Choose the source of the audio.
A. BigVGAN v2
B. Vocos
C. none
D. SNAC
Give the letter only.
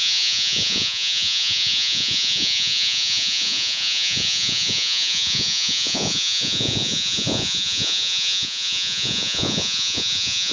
B